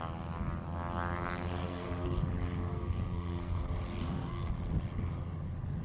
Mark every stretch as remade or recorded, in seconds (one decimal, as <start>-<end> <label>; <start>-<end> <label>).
0.0-1.6 recorded; 1.6-2.2 remade; 2.2-2.7 recorded; 2.7-3.6 remade; 3.6-4.0 recorded; 4.0-4.5 remade; 4.5-5.8 recorded

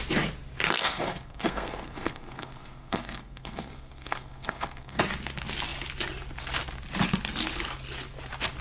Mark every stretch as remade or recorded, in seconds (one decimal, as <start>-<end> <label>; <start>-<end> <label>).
0.0-0.8 recorded; 0.8-5.0 remade; 5.0-8.6 recorded

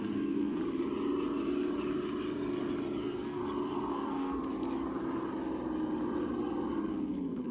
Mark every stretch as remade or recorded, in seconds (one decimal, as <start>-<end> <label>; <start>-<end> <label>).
0.0-0.6 remade; 0.6-3.0 recorded; 3.0-3.4 remade; 3.4-3.9 recorded; 3.9-4.4 remade; 4.4-6.9 recorded; 6.9-7.5 remade

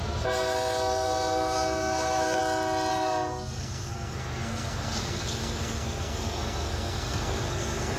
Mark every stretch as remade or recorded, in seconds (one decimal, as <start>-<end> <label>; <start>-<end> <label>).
0.0-2.4 remade; 2.4-2.9 recorded; 2.9-8.0 remade